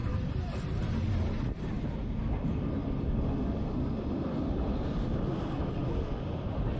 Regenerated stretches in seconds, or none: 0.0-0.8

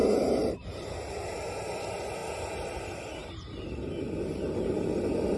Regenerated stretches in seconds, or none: 0.0-1.1; 3.2-4.1

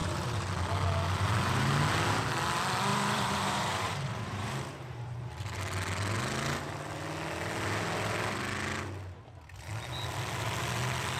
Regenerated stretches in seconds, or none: 0.0-0.5; 2.9-5.6

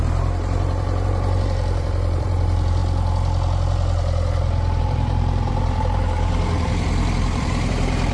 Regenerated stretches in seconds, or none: 0.0-2.8; 4.8-8.1

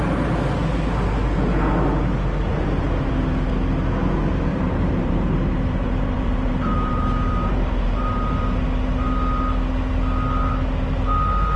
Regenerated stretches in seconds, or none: 2.5-3.1; 4.5-8.4

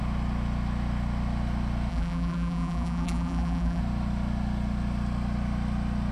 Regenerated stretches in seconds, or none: 1.9-3.8

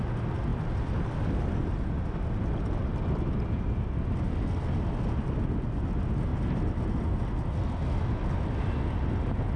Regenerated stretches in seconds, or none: 0.5-2.1; 6.3-8.8